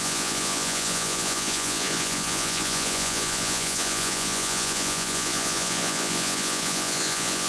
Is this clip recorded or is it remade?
remade